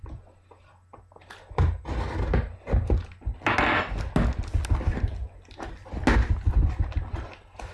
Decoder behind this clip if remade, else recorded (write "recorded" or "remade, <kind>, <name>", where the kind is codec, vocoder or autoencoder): recorded